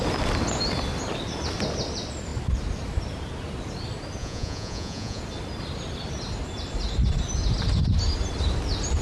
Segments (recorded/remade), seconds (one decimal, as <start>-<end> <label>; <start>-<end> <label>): 0.0-4.2 recorded; 4.2-5.2 remade; 5.2-9.0 recorded